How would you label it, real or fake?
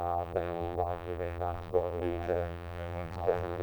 fake